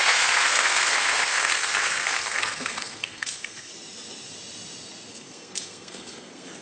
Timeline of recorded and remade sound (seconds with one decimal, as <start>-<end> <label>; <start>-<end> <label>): 0.0-3.7 remade; 3.7-5.1 recorded; 5.1-6.6 remade